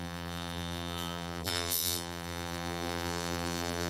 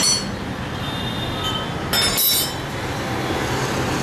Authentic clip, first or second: second